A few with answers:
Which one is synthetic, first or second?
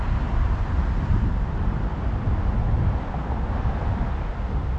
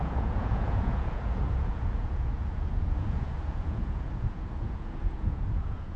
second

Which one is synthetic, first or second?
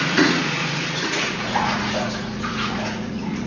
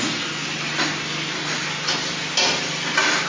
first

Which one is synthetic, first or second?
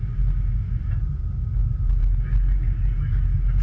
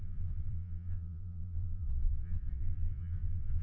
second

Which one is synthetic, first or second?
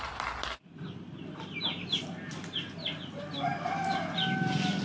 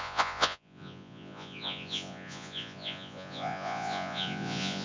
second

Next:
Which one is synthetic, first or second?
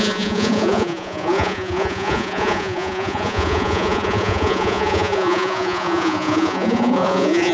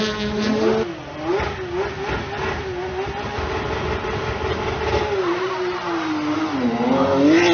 first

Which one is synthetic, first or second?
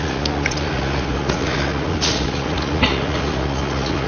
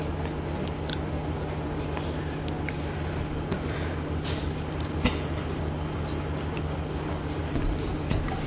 first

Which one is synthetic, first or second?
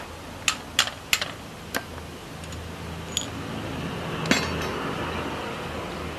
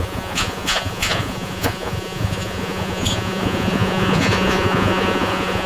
second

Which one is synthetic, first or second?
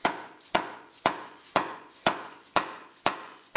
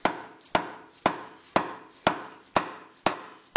first